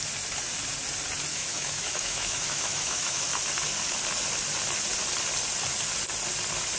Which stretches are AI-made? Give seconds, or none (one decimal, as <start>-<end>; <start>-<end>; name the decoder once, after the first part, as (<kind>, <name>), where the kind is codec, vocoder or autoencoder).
1.3-3.3 (autoencoder, DAC-VAE)